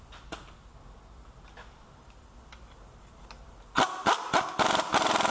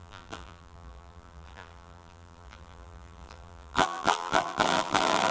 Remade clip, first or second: second